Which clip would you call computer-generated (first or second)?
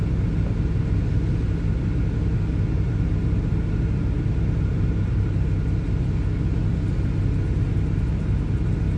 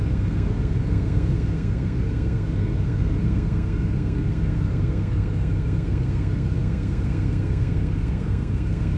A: second